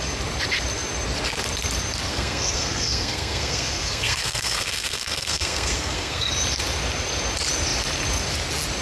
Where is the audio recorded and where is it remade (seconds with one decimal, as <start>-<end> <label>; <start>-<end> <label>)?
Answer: 0.0-2.1 recorded; 2.1-6.3 remade; 6.3-8.8 recorded